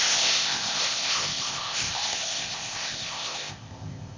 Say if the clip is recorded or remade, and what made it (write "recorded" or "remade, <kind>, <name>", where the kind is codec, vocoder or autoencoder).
remade, codec, ZipCodec